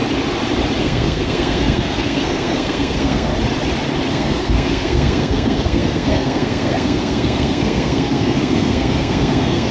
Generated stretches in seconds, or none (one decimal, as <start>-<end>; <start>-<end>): 0.8-3.3; 4.1-9.7